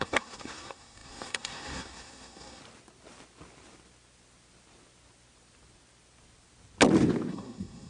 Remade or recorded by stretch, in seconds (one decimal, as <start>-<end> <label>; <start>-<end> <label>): 0.0-2.6 remade; 2.6-7.3 recorded; 7.3-7.9 remade